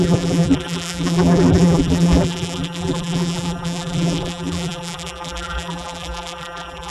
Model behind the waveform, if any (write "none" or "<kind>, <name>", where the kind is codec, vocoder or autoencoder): vocoder, BigVGAN v2